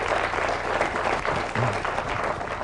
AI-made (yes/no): no